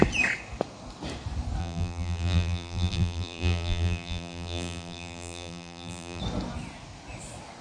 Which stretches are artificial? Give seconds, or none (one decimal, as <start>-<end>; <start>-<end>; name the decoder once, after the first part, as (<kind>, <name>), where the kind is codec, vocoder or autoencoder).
1.6-6.2 (vocoder, BigVGAN v2)